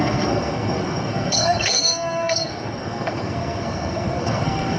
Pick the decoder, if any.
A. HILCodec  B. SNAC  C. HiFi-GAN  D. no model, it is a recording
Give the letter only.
B